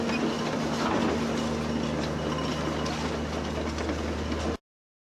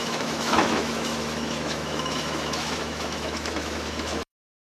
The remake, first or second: second